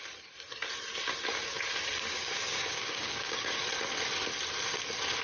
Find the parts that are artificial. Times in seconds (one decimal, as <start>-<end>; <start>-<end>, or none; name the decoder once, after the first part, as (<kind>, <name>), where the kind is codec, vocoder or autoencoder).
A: 1.9-3.6 (codec, DAC)